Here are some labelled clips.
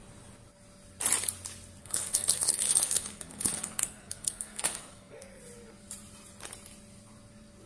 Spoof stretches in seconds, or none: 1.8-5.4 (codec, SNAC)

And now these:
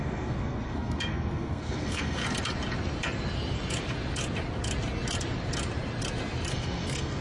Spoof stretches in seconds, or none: 0.0-2.2 (codec, SNAC); 6.5-7.2